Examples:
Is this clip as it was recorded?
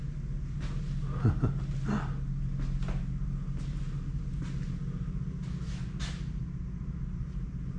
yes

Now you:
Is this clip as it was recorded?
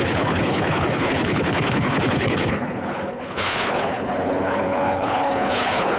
no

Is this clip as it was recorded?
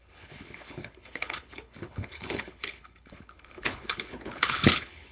no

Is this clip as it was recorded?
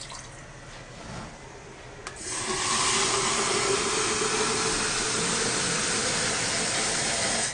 yes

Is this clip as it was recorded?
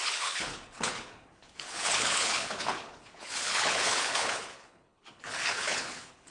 no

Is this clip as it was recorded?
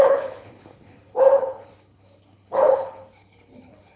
no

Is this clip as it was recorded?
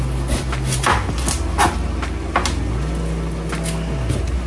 yes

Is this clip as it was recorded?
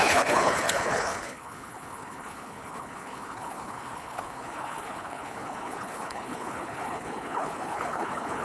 no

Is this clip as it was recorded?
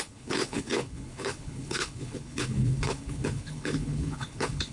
no